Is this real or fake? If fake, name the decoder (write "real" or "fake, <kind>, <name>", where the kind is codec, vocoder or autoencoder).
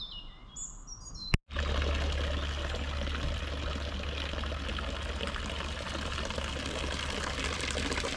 real